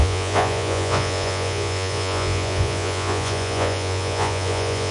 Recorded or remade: remade